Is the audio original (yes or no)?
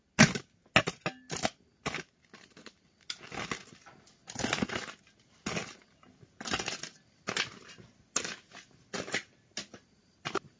yes